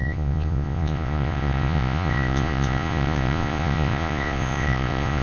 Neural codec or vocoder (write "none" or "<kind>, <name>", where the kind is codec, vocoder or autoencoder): vocoder, Vocos